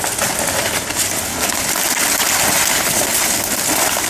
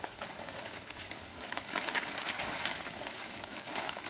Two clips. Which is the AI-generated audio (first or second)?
second